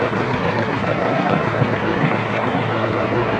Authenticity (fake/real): fake